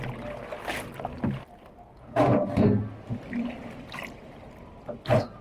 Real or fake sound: real